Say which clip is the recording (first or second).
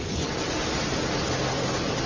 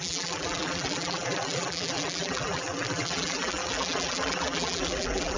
first